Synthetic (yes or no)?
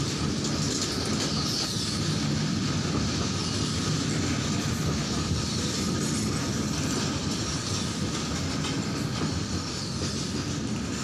no